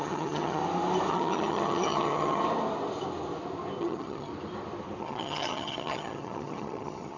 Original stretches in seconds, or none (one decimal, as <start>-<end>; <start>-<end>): 0.6-1.1; 2.4-3.8; 4.3-5.0